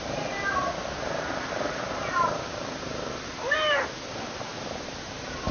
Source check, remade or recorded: remade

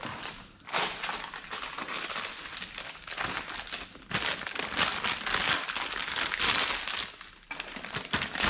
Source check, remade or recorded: recorded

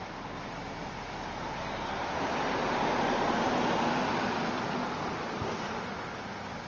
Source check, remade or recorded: recorded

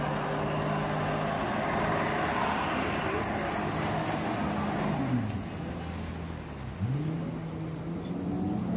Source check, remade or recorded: recorded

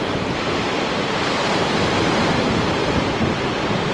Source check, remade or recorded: remade